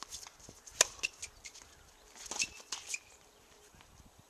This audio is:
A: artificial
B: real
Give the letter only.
B